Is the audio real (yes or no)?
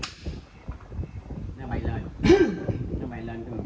yes